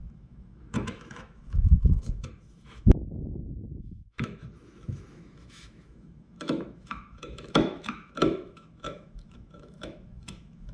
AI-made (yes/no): yes